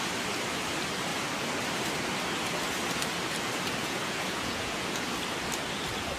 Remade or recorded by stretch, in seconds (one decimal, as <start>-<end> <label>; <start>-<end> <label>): 0.0-3.8 recorded; 3.8-5.1 remade; 5.1-6.2 recorded

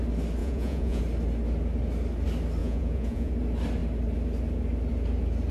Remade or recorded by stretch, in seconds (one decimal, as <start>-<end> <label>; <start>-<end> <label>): 0.0-0.4 recorded; 0.4-1.0 remade; 1.0-2.6 recorded; 2.6-3.3 remade; 3.3-5.5 recorded

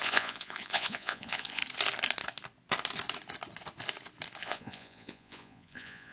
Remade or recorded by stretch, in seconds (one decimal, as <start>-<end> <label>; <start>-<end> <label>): 0.0-1.6 remade; 1.6-4.4 recorded; 4.4-6.1 remade

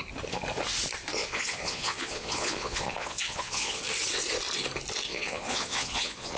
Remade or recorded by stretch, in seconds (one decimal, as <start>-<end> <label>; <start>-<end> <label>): 0.0-1.2 recorded; 1.2-3.8 remade; 3.8-5.1 recorded; 5.1-6.4 remade

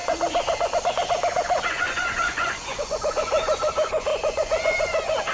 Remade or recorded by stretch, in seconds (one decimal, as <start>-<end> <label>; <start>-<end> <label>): 0.0-5.3 remade

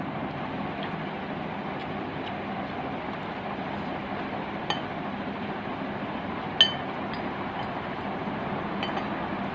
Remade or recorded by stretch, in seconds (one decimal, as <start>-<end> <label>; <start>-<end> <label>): 0.0-9.5 recorded

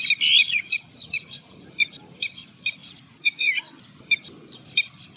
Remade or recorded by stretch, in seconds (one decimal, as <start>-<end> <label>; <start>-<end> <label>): 0.0-0.4 recorded; 0.4-1.9 remade; 1.9-2.8 recorded; 2.8-3.6 remade; 3.6-5.2 recorded

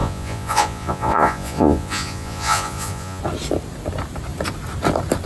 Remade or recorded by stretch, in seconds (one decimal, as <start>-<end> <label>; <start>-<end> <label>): 0.0-3.2 remade; 3.2-5.3 recorded